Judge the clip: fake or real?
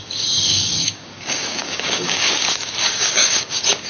fake